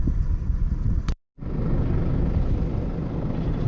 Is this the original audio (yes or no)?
yes